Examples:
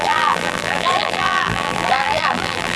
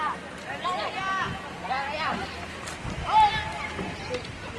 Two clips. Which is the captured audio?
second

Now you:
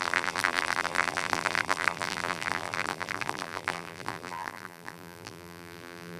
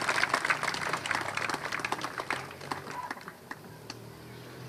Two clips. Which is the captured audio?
second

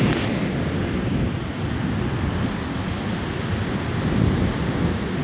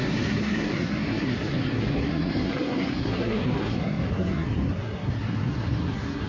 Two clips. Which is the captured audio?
first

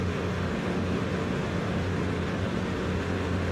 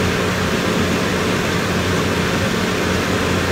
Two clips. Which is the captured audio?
second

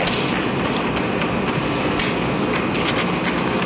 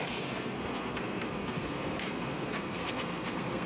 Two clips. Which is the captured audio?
first